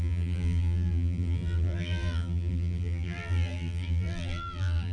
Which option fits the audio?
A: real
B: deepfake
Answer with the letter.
B